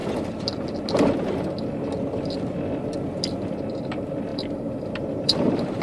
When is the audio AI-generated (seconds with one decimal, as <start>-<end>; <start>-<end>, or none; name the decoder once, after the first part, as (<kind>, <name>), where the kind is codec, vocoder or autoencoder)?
3.5-5.8 (vocoder, BigVGAN v2)